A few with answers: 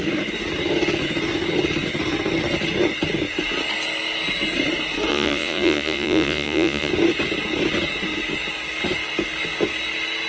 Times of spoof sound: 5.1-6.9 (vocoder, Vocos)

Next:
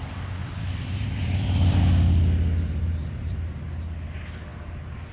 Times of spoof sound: 0.4-1.8 (vocoder, BigVGAN v2); 3.0-3.6

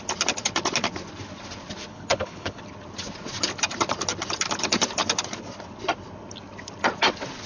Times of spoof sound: 1.9-2.6 (codec, HILCodec)